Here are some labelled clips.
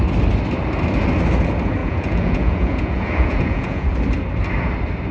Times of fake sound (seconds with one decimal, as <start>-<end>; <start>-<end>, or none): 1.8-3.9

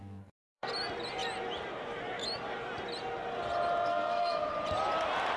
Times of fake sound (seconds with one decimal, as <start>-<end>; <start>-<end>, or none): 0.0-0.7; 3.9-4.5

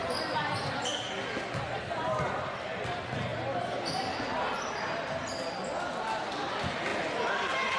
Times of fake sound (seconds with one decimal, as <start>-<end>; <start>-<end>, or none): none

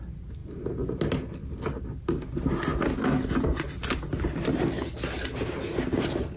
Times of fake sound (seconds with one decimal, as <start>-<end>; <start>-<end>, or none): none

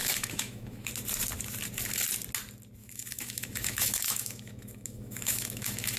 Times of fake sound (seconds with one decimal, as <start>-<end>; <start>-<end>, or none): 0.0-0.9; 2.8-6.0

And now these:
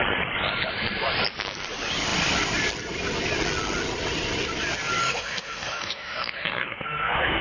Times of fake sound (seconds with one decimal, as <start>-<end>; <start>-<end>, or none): 5.0-7.4